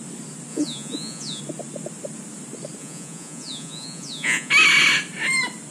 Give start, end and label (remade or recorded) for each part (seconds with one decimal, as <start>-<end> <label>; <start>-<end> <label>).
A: 0.0-0.5 recorded; 0.5-1.4 remade; 1.4-2.8 recorded; 2.8-4.5 remade; 4.5-5.7 recorded